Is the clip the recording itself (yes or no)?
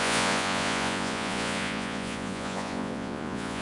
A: no